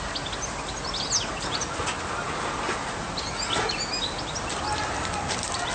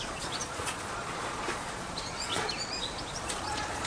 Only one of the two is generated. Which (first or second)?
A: second